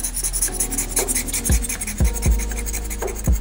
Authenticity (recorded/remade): recorded